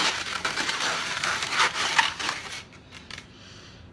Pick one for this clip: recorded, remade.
remade